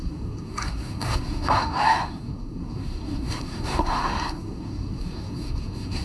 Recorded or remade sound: remade